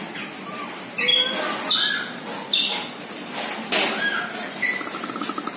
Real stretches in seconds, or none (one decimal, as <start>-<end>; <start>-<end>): 0.0-5.6